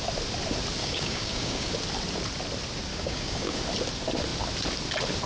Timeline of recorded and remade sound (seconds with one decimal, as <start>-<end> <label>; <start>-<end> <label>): 0.0-0.8 recorded; 0.8-1.7 remade; 1.7-2.9 recorded; 2.9-3.6 remade; 3.6-5.3 recorded

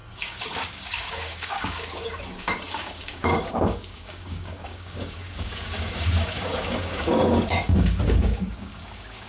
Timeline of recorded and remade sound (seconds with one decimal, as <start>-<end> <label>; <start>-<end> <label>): 0.0-9.3 remade

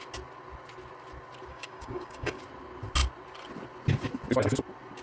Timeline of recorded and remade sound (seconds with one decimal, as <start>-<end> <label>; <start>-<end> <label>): 0.0-1.5 recorded; 1.5-2.4 remade; 2.4-5.0 recorded